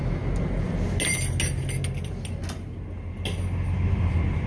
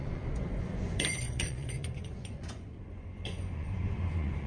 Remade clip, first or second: second